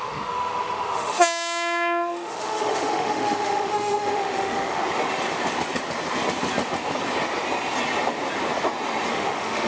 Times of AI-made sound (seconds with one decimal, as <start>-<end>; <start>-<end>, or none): 0.0-4.8; 9.1-9.7